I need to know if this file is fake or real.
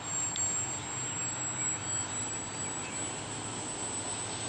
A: real